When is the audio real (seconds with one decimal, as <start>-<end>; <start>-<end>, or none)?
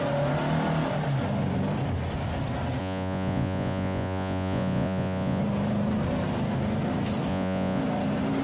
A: 0.0-2.8; 5.4-7.3; 7.8-8.4